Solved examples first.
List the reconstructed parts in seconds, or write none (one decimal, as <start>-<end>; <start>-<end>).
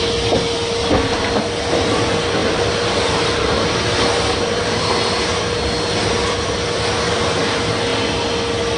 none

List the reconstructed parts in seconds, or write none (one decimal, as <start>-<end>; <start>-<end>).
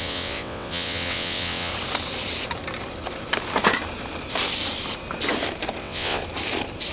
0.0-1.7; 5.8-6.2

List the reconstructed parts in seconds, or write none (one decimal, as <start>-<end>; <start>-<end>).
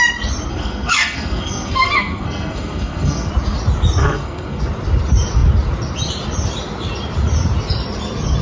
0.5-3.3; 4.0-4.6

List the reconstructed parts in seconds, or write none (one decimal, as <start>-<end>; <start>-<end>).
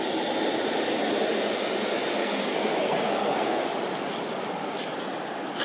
2.2-3.6